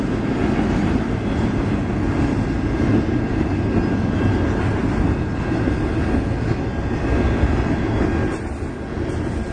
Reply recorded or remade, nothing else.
recorded